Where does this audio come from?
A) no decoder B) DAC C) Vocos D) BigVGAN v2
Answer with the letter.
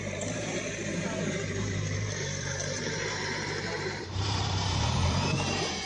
D